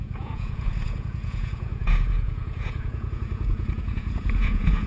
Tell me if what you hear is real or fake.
fake